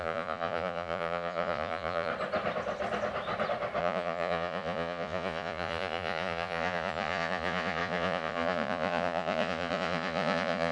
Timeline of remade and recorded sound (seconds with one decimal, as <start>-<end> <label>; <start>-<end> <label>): 0.0-2.1 remade; 2.1-3.8 recorded; 3.8-10.7 remade